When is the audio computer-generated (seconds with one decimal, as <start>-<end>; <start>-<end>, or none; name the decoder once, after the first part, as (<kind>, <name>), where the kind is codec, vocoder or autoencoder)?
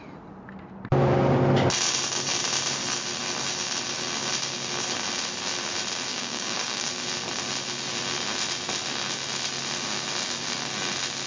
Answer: 6.1-6.9 (codec, DAC)